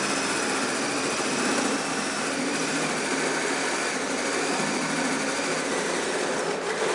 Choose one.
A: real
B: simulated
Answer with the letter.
A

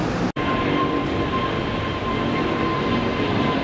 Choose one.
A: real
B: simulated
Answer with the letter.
B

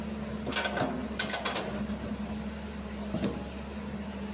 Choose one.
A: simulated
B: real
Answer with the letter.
B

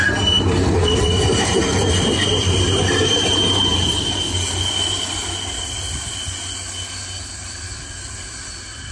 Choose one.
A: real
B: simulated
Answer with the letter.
A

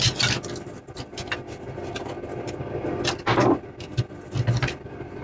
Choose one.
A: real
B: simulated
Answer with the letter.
A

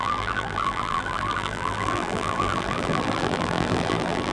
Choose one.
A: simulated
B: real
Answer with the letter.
A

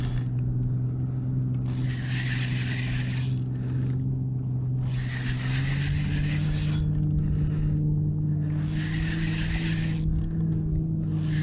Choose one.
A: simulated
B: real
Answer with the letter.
B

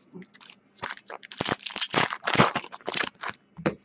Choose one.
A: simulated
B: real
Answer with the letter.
A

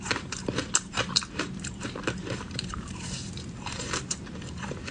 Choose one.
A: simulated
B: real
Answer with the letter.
A